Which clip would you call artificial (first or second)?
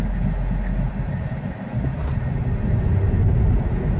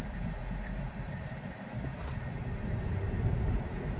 second